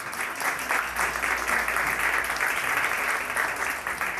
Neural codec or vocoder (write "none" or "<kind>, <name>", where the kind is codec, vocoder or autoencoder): none